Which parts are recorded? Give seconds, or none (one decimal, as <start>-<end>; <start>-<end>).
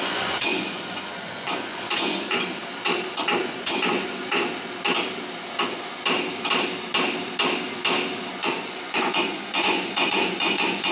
2.6-3.4; 4.3-8.3